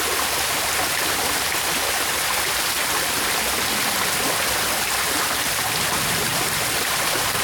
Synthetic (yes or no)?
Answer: no